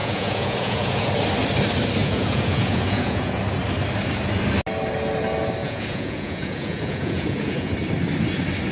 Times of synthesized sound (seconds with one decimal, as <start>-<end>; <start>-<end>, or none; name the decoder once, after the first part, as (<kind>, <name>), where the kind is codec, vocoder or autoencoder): 0.0-1.1 (vocoder, Vocos); 2.0-3.4; 5.6-7.7